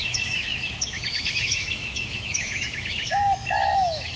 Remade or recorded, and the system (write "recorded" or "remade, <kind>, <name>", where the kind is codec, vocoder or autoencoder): remade, autoencoder, DAC-VAE